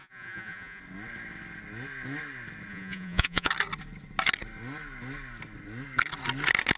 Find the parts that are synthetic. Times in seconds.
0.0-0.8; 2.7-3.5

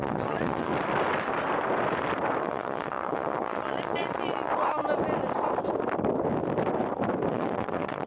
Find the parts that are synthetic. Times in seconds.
0.0-0.7; 2.4-4.5; 7.3-8.1

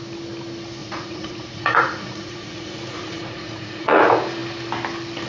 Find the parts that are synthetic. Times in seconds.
0.8-4.0

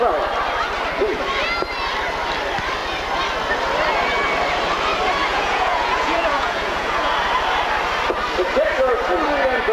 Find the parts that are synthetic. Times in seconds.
5.3-7.1